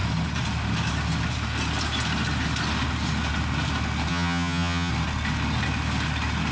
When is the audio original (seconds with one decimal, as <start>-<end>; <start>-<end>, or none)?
0.0-4.1; 4.9-6.5